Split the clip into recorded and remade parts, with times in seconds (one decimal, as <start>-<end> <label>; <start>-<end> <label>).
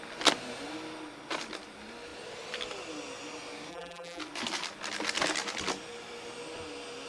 0.0-3.7 recorded; 3.7-4.2 remade; 4.2-7.1 recorded